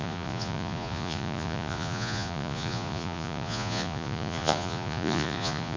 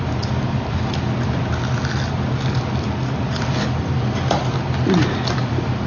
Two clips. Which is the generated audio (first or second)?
first